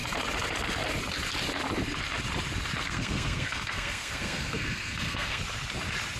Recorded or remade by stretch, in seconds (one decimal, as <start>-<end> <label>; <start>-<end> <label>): 0.0-2.8 recorded; 2.8-5.4 remade; 5.4-6.2 recorded